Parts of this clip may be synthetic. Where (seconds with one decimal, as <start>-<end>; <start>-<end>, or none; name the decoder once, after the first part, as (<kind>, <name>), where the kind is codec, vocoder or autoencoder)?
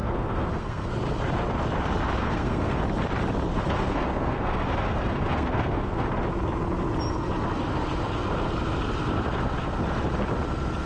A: 0.0-0.9 (codec, SNAC); 2.2-2.8; 3.5-6.1